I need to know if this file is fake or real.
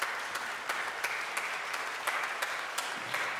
real